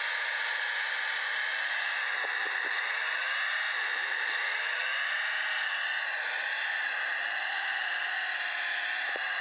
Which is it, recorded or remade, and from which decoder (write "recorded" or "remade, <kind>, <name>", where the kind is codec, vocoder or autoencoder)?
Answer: recorded